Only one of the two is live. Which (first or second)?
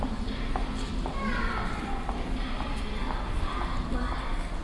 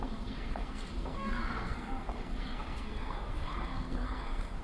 first